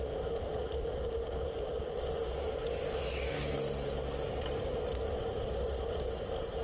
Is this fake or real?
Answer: real